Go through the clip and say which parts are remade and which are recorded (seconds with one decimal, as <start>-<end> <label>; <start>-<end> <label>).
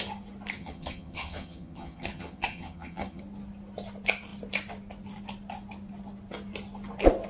0.0-0.6 recorded; 0.6-3.2 remade; 3.2-7.3 recorded